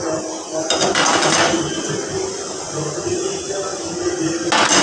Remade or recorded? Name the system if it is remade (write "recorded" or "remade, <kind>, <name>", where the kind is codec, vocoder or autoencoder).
recorded